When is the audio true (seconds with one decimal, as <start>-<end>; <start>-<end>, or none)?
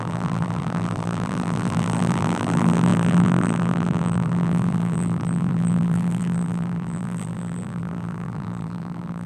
none